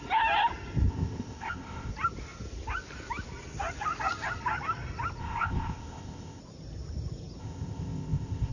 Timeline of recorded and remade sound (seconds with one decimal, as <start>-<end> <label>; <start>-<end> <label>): 0.0-0.9 recorded; 0.9-1.9 remade; 1.9-5.2 recorded; 5.2-6.4 remade; 6.4-7.4 recorded; 7.4-8.5 remade

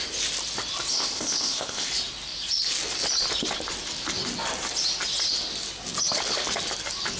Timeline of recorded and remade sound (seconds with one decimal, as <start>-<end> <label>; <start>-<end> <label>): 0.0-0.9 recorded; 0.9-1.9 remade; 1.9-7.2 recorded